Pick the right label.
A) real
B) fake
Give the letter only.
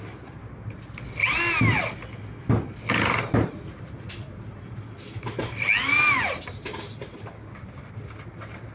A